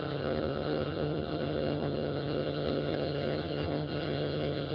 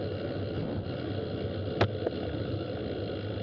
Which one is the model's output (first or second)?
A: first